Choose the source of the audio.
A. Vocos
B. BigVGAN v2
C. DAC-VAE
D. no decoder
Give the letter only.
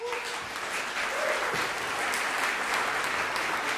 D